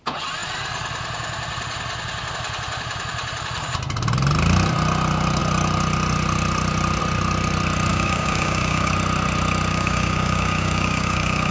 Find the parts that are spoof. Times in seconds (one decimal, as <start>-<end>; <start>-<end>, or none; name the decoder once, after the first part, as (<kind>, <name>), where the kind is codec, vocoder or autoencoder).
7.9-8.9 (codec, DAC); 9.7-11.5